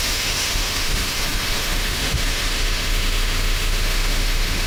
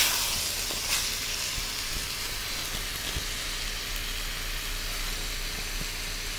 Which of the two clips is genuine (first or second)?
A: second